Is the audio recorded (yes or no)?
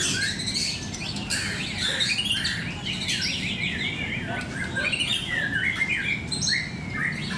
yes